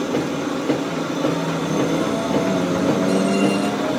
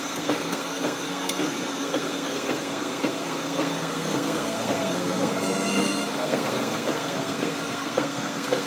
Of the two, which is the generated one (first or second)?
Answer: second